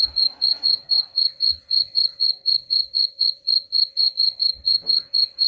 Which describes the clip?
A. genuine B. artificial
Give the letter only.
B